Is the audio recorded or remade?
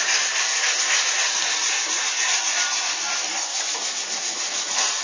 recorded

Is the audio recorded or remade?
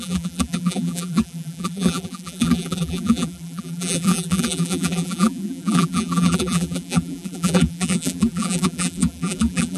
remade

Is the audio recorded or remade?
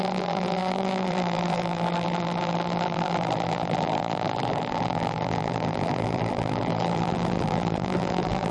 remade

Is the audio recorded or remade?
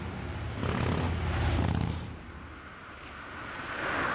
recorded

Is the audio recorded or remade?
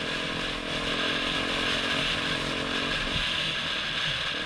recorded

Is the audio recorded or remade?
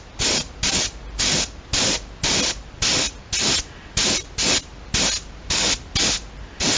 recorded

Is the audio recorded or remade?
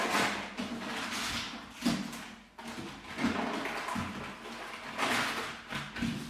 recorded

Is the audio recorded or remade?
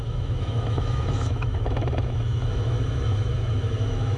remade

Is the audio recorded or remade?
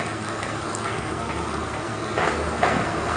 remade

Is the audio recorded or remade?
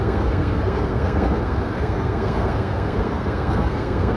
remade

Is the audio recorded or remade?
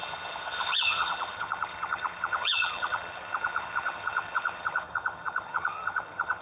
remade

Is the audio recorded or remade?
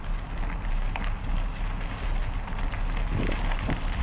recorded